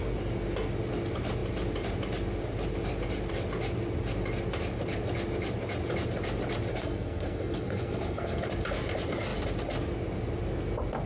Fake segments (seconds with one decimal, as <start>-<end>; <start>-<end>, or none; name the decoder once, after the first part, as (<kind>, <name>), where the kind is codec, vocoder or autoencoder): 6.7-8.5 (codec, SNAC)